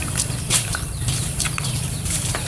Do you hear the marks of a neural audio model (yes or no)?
yes